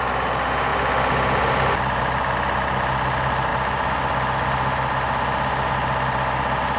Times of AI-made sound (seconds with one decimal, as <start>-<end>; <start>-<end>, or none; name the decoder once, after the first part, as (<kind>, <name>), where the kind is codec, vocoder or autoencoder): none